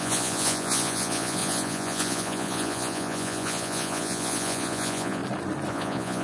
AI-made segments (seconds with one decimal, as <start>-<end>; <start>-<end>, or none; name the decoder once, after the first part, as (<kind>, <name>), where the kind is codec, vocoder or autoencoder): 0.0-5.2 (vocoder, Vocos); 5.7-6.2